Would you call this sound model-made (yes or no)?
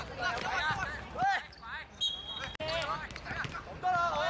no